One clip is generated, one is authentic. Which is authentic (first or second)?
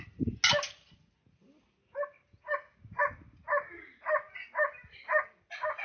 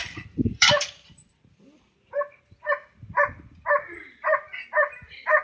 first